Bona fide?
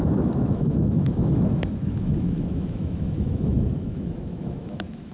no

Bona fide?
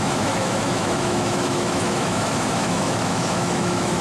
no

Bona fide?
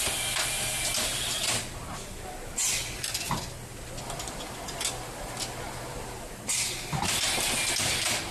yes